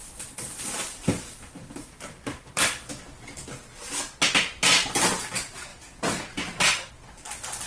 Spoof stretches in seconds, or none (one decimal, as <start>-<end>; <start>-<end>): 0.0-2.5; 5.7-6.9